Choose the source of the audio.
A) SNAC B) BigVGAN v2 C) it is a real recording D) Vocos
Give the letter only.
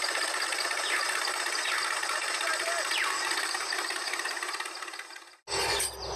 C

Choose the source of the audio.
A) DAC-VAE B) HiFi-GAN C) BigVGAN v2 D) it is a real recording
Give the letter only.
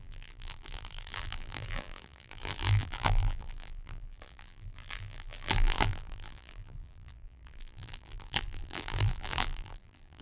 C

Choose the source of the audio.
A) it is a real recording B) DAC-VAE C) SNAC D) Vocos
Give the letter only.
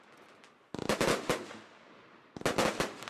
A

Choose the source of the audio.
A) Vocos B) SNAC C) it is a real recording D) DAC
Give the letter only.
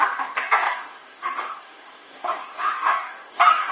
D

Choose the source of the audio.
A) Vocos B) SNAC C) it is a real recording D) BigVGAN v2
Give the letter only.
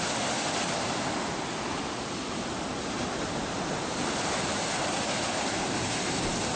C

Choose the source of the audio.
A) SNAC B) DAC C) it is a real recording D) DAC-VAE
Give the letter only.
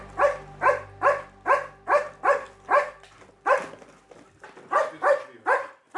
C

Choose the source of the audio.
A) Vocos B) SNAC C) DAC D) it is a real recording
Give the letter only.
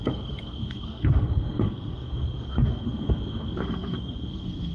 B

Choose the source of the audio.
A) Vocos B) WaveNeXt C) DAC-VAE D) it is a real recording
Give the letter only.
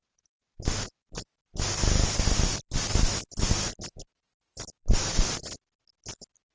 D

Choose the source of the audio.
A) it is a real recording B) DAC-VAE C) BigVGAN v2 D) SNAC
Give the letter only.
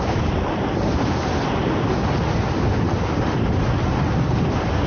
A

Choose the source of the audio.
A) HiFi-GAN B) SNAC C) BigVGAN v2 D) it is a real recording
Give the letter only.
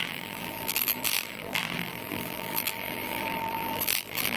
C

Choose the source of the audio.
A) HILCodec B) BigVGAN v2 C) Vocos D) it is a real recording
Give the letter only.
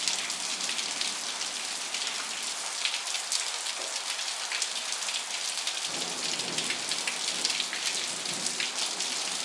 D